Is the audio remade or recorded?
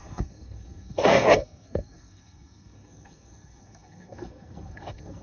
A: remade